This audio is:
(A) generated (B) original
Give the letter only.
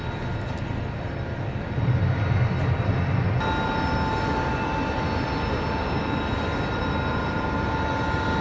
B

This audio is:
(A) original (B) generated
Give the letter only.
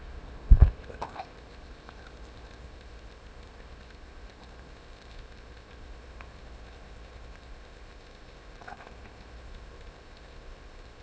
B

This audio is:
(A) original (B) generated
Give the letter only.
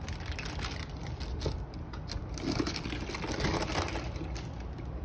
A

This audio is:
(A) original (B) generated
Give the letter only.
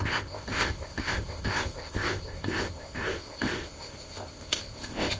B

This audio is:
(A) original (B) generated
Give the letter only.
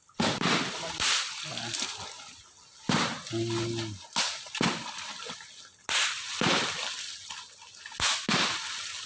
A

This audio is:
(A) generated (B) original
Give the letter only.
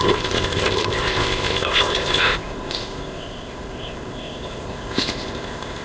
A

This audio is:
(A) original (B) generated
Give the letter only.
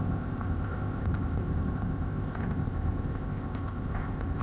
B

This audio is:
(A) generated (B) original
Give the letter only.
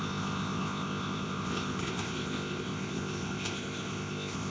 A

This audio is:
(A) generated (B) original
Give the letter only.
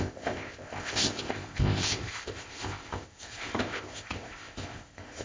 A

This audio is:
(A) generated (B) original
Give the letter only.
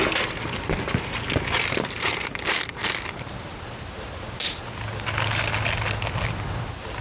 B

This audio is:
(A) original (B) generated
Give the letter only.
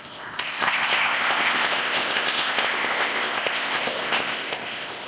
B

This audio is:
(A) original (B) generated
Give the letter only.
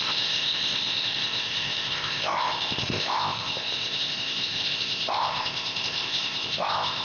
B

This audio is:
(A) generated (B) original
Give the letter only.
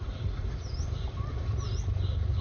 B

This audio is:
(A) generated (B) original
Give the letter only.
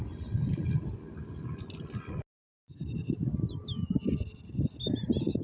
B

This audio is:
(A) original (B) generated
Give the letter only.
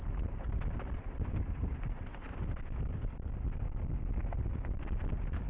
A